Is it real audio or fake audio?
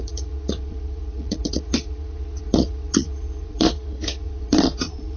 fake